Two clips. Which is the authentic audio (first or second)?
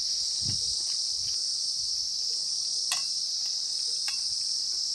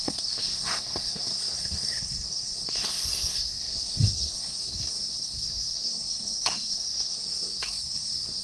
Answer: first